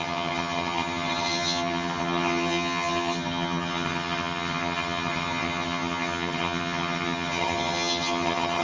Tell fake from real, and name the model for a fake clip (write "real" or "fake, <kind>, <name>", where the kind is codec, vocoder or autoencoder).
fake, vocoder, HiFi-GAN